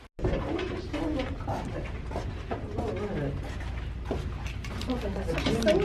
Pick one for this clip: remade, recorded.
recorded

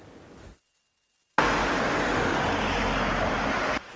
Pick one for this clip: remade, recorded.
recorded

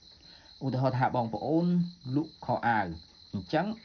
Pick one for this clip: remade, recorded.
recorded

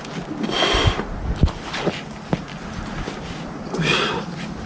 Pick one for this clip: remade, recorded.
recorded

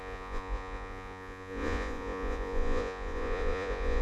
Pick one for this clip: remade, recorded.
remade